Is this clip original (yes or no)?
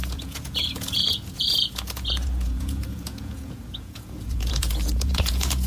no